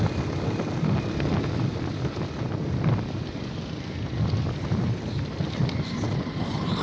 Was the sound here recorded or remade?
recorded